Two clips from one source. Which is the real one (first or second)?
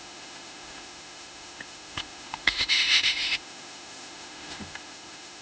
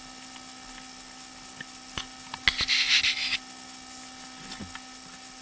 second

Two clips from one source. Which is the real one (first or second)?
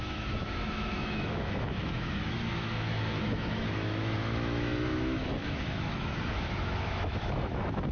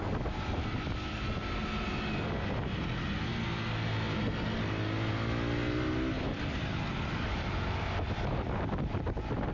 second